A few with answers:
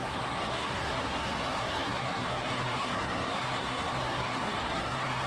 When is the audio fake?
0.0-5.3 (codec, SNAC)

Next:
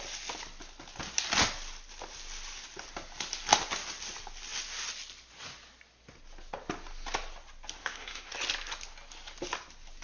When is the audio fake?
7.8-8.3 (autoencoder, DAC-VAE)

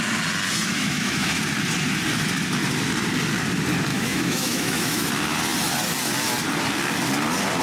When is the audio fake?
0.7-1.4 (autoencoder, DAC-VAE); 3.9-5.1